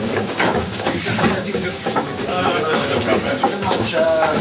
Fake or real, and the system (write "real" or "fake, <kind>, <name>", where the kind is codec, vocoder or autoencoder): fake, codec, DAC